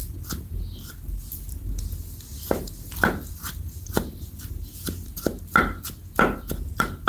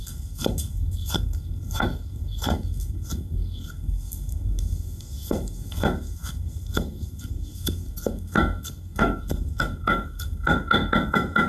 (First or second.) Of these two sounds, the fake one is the second